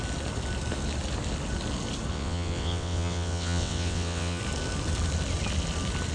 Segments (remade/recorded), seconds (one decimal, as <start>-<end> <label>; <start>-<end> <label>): 0.0-2.1 recorded; 2.1-4.4 remade; 4.4-6.1 recorded